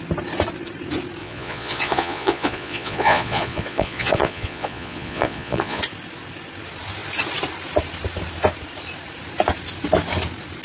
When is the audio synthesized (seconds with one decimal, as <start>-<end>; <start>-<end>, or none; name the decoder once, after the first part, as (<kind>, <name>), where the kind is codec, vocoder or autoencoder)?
1.2-5.8 (vocoder, Vocos)